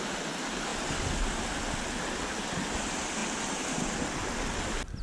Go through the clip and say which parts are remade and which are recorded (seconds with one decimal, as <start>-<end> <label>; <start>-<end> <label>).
0.0-5.0 recorded